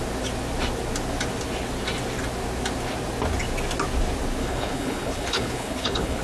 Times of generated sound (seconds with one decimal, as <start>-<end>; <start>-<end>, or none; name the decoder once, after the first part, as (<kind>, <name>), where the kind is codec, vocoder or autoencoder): 4.4-6.2 (codec, HILCodec)